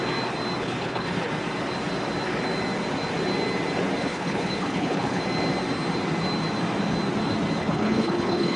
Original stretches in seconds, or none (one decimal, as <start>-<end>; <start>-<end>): 0.0-0.6; 1.3-4.0; 5.2-7.6